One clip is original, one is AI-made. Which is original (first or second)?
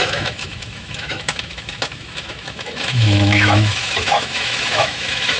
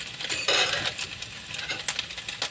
second